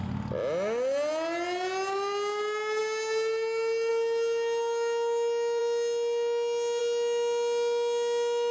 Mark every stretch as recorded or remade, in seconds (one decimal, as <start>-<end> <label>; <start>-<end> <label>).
0.0-8.5 recorded